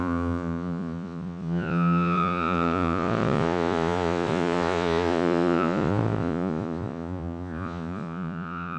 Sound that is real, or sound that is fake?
fake